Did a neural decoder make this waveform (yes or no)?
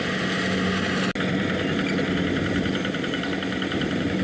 no